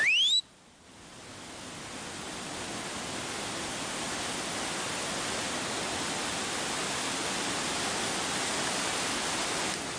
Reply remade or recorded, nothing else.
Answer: recorded